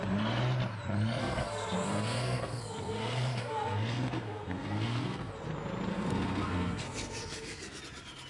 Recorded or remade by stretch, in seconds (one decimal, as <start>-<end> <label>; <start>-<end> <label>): 0.0-1.2 recorded; 1.2-5.3 remade; 5.3-5.9 recorded; 5.9-7.8 remade; 7.8-8.3 recorded